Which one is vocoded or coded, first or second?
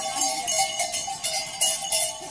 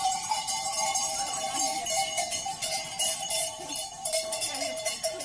second